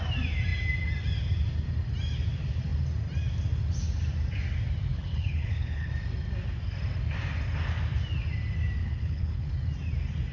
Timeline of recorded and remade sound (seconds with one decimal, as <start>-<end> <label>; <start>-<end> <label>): 0.0-4.9 recorded; 4.9-5.9 remade; 5.9-8.8 recorded; 8.8-9.5 remade; 9.5-10.3 recorded